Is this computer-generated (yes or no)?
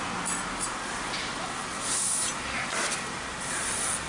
no